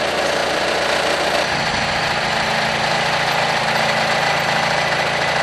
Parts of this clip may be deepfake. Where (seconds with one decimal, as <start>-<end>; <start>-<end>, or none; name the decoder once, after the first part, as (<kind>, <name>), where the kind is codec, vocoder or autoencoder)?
none